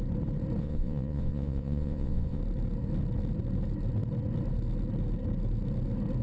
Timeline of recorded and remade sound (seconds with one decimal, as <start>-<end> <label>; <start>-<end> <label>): 0.0-0.6 recorded; 0.6-2.4 remade; 2.4-6.2 recorded